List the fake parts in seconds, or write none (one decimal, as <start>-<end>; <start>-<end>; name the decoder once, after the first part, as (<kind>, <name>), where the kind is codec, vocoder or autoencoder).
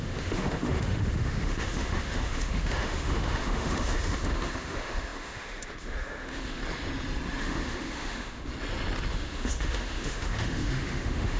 0.0-6.6 (autoencoder, DAC-VAE); 7.4-8.5; 9.1-11.4